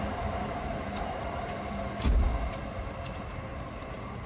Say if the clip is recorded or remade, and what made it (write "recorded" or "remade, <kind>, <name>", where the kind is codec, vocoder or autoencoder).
recorded